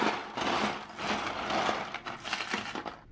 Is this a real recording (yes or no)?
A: yes